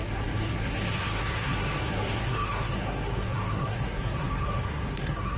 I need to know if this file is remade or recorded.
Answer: remade